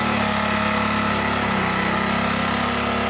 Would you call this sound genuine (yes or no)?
yes